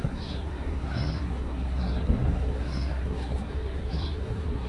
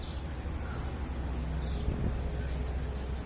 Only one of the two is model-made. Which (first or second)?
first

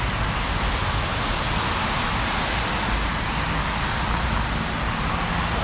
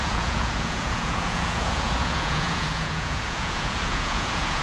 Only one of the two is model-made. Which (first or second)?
second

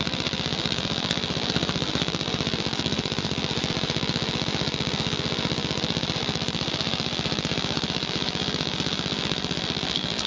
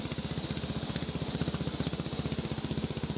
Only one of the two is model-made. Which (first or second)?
first